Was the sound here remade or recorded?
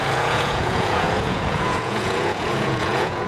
remade